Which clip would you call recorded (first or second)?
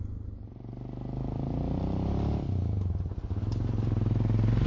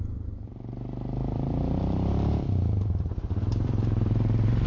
first